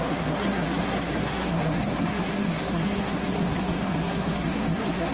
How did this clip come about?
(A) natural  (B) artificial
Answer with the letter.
B